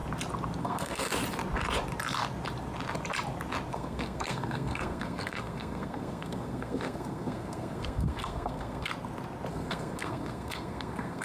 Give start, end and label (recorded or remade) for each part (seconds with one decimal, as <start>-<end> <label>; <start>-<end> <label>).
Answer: 0.0-0.6 recorded; 0.6-1.1 remade; 1.1-3.7 recorded; 3.7-8.9 remade; 8.9-9.5 recorded; 9.5-11.2 remade